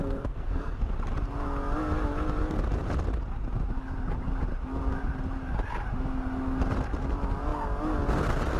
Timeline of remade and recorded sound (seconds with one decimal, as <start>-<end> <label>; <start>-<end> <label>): 0.0-0.9 remade; 0.9-8.6 recorded